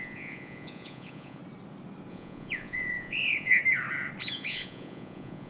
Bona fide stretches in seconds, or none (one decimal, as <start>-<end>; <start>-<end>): 1.4-2.1; 3.6-4.2

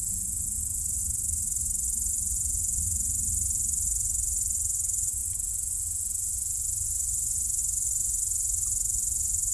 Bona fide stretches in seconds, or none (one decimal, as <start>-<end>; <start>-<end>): 1.0-2.1

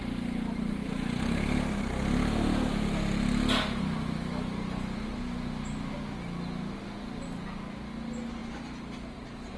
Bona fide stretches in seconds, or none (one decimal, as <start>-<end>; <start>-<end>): 0.0-9.6